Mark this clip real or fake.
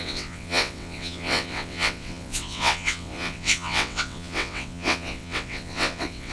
fake